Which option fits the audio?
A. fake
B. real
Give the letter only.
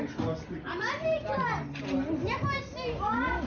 B